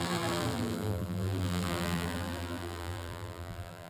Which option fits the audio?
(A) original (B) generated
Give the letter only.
B